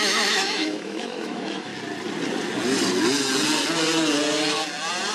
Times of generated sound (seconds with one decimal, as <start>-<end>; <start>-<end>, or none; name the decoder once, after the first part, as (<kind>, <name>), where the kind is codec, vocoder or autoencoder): 0.0-1.7 (autoencoder, DAC-VAE)